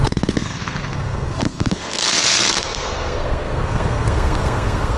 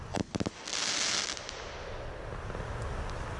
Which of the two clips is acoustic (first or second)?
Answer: second